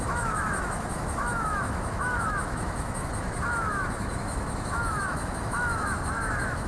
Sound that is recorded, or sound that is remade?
remade